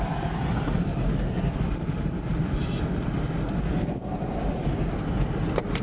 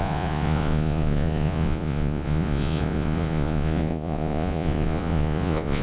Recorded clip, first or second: first